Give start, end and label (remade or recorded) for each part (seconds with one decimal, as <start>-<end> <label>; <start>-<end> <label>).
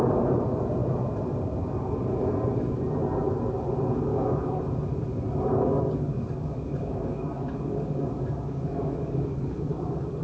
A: 0.0-4.1 recorded; 4.1-4.6 remade; 4.6-5.5 recorded; 5.5-10.2 remade